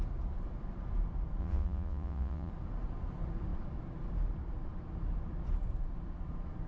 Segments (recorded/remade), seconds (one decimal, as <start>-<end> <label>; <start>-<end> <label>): 0.0-1.4 recorded; 1.4-2.5 remade; 2.5-6.7 recorded